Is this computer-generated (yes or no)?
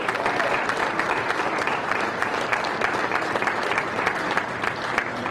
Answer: no